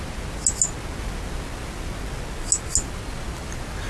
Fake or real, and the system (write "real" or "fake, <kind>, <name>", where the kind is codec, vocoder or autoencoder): real